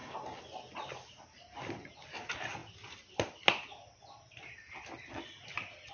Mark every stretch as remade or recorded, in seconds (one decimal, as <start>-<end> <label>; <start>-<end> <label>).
0.0-5.9 recorded